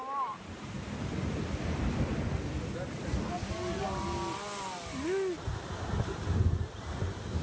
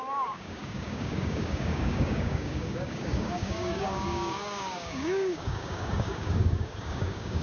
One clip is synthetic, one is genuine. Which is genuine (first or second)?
first